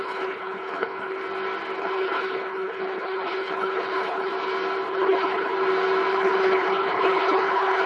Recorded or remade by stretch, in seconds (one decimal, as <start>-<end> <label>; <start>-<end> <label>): 0.0-1.2 remade; 1.2-1.8 recorded; 1.8-4.3 remade; 4.3-4.9 recorded; 4.9-5.5 remade; 5.5-6.1 recorded; 6.1-7.9 remade